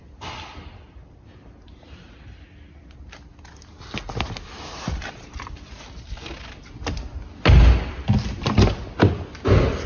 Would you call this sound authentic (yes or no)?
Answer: yes